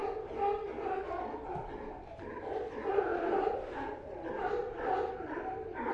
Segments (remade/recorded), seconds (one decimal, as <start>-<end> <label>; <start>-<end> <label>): 0.0-2.3 recorded; 2.3-4.6 remade; 4.6-5.3 recorded; 5.3-5.9 remade